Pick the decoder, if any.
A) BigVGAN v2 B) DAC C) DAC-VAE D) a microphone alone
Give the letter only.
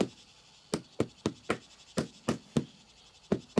D